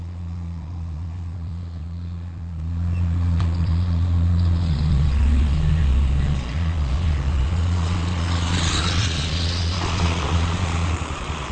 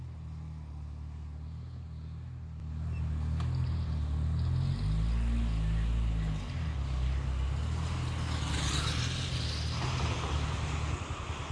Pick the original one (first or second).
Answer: second